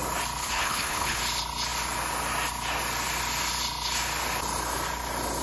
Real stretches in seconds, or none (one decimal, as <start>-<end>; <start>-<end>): 0.0-0.4; 1.2-5.4